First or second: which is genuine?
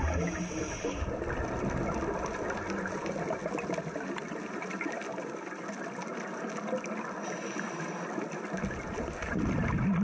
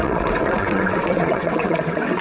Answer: first